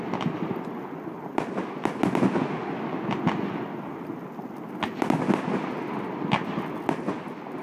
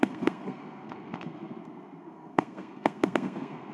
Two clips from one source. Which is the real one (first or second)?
first